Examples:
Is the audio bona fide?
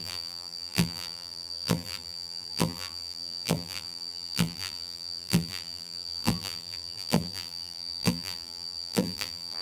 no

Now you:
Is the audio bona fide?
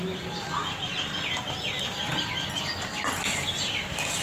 yes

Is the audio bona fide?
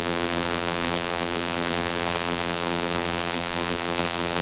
no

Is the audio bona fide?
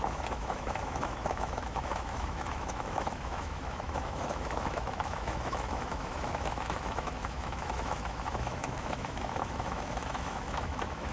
no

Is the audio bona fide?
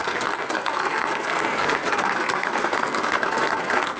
no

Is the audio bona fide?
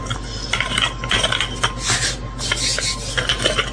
yes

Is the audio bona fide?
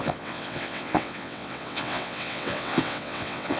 no